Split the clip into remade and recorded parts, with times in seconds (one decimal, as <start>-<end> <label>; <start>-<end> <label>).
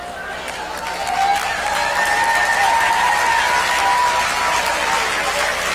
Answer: 0.0-1.4 recorded; 1.4-3.0 remade; 3.0-4.0 recorded; 4.0-4.6 remade; 4.6-5.7 recorded